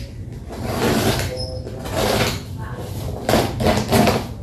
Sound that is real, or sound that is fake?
real